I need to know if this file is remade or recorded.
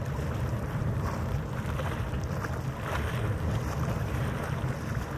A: recorded